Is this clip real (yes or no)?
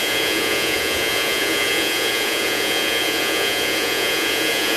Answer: no